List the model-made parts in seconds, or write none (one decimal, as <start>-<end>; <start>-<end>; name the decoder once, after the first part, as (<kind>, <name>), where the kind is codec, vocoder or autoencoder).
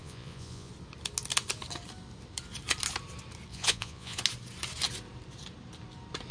0.0-0.7 (vocoder, Vocos); 3.5-4.2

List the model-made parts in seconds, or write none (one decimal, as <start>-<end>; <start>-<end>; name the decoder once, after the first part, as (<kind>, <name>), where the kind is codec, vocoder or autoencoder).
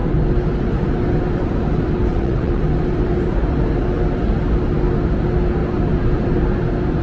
2.1-2.6 (vocoder, WaveNeXt)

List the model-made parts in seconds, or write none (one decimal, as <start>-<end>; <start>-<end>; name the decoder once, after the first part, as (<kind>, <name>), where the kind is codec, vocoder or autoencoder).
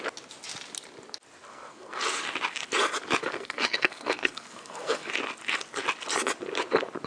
1.5-2.0 (codec, SNAC); 3.2-5.1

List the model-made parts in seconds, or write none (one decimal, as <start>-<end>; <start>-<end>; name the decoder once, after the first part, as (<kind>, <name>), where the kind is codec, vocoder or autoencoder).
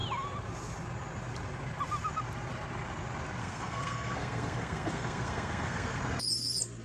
3.4-6.0 (codec, SNAC)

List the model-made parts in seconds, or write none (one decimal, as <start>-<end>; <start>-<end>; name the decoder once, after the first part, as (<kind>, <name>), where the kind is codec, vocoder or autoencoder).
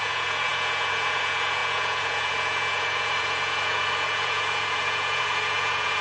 0.0-6.0 (vocoder, Vocos)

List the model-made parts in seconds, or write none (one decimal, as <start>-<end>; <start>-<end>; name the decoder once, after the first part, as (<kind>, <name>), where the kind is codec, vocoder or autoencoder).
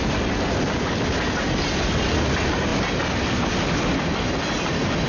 none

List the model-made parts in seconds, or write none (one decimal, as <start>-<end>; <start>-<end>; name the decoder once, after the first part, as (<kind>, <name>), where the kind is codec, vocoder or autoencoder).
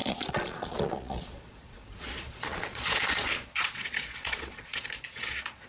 0.0-5.7 (vocoder, Vocos)